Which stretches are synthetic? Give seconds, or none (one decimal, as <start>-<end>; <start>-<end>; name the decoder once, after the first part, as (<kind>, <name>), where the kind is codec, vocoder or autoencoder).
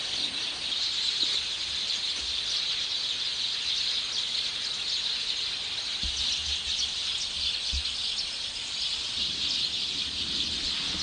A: none